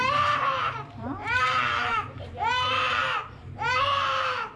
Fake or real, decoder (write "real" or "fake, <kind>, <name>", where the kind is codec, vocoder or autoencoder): fake, vocoder, BigVGAN v2